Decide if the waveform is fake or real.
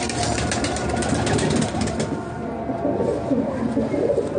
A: real